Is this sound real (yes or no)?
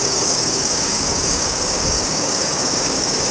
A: no